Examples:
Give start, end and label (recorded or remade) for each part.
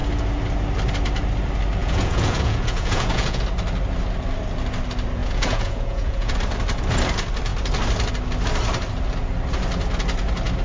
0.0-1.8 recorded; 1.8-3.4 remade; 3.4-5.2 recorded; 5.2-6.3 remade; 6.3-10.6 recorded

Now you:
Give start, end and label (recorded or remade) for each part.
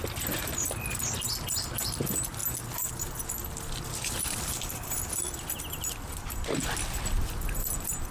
0.0-8.1 recorded